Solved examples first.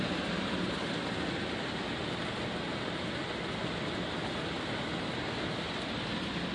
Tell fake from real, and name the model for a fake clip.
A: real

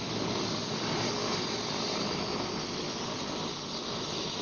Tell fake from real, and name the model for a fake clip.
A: real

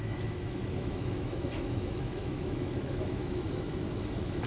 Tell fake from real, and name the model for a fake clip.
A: fake, autoencoder, DAC-VAE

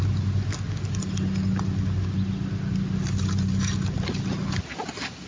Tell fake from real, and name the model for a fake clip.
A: real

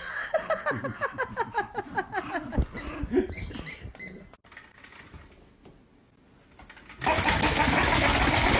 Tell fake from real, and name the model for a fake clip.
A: real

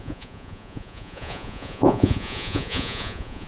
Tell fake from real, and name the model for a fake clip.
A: fake, vocoder, Vocos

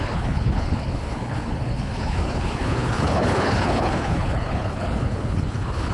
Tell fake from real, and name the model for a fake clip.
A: fake, codec, HILCodec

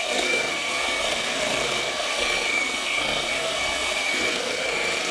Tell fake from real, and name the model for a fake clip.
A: fake, codec, SNAC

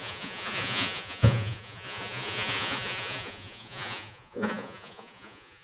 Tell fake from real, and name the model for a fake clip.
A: fake, vocoder, Vocos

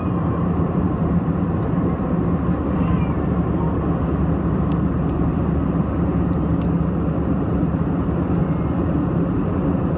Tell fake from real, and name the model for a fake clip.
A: real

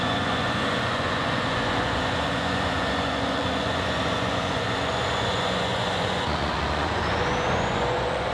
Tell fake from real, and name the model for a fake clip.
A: fake, vocoder, Vocos